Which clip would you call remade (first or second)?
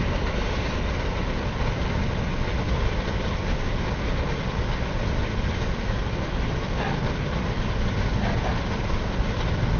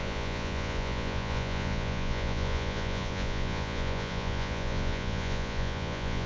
second